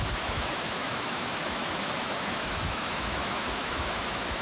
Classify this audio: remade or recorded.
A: remade